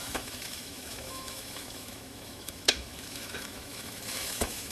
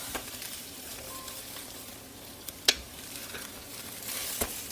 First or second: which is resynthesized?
first